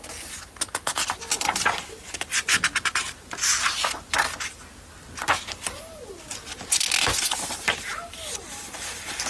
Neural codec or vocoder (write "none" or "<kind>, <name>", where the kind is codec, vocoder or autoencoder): none